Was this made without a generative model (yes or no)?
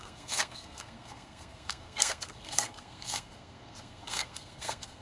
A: no